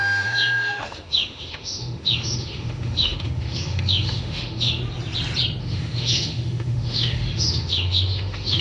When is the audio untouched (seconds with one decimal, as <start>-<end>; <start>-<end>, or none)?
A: 4.8-5.6